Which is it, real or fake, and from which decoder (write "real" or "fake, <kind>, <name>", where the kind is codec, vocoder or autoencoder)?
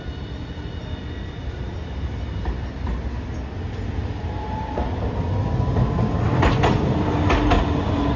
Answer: real